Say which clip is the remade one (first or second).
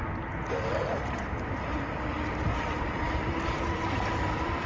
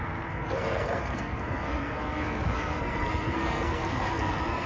second